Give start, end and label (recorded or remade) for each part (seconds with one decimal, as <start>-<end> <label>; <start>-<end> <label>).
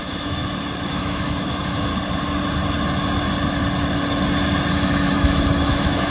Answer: 0.0-0.4 remade; 0.4-0.9 recorded; 0.9-1.9 remade; 1.9-4.7 recorded; 4.7-6.1 remade